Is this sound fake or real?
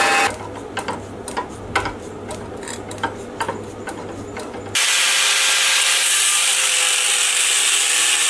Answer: real